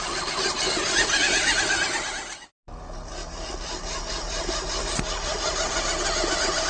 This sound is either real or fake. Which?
real